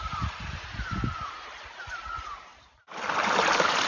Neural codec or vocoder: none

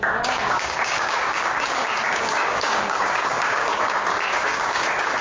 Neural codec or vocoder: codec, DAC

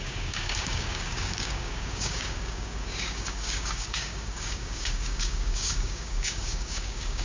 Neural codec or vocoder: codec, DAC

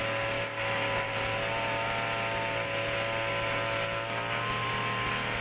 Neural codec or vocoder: none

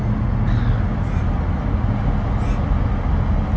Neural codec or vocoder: none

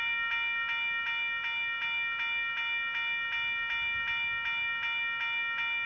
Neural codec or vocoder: none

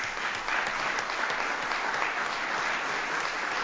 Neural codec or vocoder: none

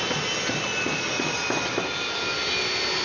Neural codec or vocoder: none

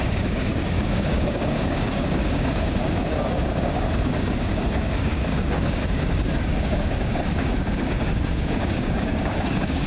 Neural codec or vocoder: codec, DAC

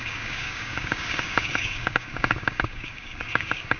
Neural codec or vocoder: codec, DAC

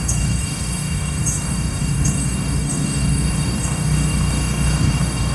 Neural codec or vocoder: codec, DAC